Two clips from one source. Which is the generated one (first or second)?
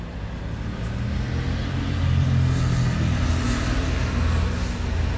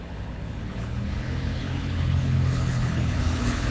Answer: second